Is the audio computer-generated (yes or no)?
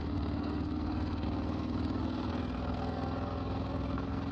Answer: yes